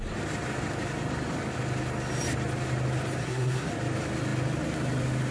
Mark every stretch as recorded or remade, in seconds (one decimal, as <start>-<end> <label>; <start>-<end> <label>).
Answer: 0.0-3.2 recorded; 3.2-3.7 remade; 3.7-5.3 recorded